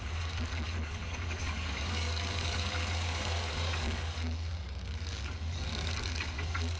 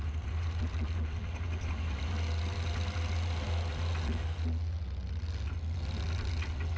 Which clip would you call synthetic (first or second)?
first